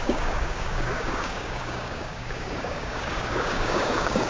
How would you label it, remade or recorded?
remade